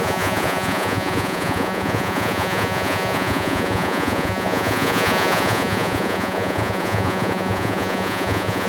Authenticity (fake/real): fake